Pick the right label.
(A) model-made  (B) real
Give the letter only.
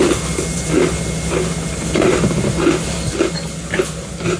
B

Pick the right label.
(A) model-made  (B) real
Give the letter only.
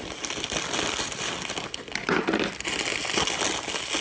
B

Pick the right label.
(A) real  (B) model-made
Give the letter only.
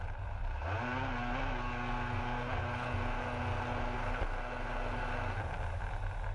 A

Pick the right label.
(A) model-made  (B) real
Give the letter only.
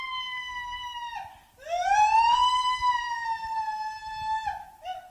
B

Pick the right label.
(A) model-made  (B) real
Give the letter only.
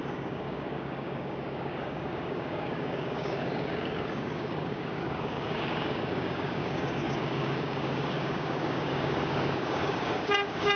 A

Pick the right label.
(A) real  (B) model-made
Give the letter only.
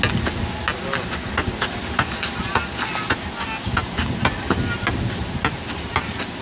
A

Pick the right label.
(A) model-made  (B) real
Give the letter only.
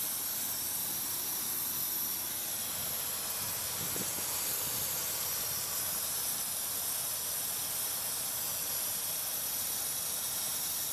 B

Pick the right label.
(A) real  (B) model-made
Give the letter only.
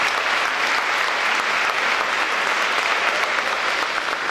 A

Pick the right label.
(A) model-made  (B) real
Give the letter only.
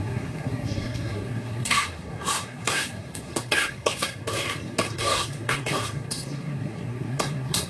A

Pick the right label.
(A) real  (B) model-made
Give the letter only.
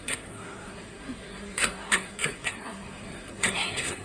B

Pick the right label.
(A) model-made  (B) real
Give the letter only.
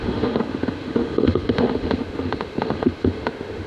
A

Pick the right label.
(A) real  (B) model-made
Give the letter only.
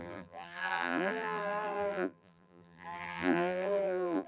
B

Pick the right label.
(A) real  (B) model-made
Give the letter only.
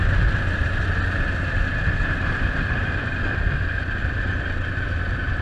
A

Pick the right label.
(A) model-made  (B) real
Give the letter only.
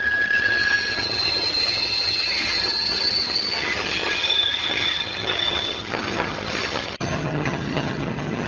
A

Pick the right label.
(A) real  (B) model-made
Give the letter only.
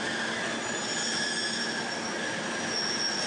A